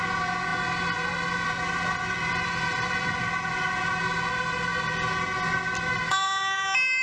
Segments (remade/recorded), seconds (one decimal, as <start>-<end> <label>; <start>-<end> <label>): 0.0-6.1 recorded; 6.1-7.0 remade